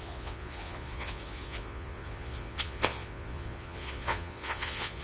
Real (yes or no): no